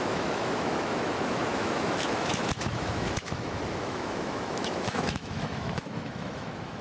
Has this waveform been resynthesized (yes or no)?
yes